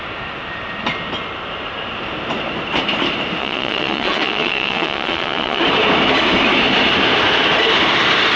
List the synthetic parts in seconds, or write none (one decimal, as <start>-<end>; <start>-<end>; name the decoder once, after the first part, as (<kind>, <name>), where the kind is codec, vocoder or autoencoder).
3.4-5.6 (vocoder, Vocos)